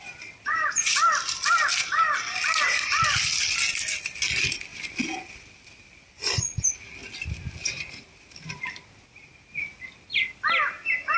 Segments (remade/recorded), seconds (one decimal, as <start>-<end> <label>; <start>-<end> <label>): 0.0-11.2 recorded